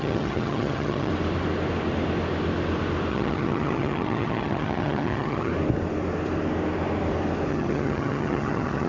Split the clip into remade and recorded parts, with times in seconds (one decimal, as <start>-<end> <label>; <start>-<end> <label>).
0.0-1.1 remade; 1.1-3.1 recorded; 3.1-5.5 remade; 5.5-7.5 recorded; 7.5-8.9 remade